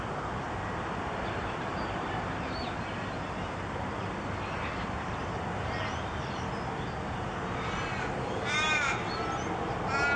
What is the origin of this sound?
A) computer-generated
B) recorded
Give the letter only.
B